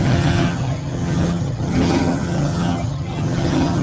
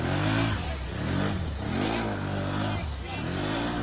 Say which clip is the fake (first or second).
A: first